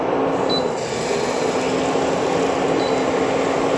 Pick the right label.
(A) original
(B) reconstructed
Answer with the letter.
A